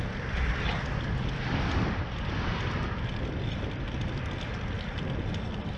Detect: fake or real real